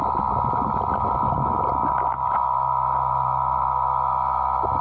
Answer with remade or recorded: recorded